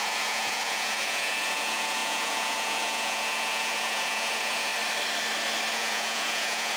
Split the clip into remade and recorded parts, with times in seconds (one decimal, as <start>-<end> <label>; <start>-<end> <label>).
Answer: 0.0-4.7 remade; 4.7-5.7 recorded; 5.7-6.8 remade